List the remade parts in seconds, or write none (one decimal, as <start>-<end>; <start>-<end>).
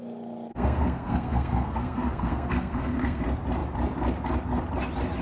0.5-3.2